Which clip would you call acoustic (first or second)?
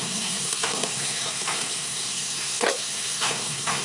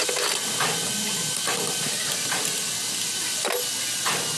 second